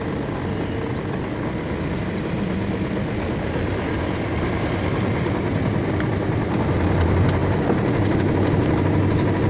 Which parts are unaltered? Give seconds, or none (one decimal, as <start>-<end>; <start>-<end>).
0.0-9.5